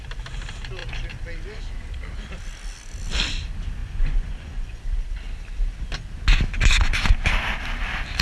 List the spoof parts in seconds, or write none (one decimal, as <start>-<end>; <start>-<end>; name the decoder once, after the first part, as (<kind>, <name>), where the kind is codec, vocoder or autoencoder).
3.8-4.8 (vocoder, Vocos)